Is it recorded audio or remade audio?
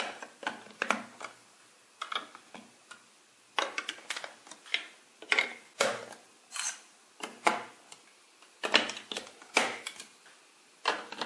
recorded